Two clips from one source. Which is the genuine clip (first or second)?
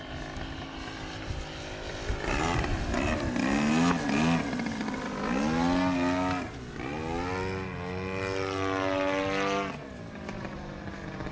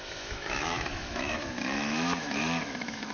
first